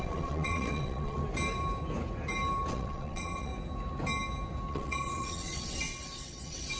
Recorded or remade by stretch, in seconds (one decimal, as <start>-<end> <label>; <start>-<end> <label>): 0.0-1.2 remade; 1.2-2.7 recorded; 2.7-3.5 remade; 3.5-4.7 recorded; 4.7-6.8 remade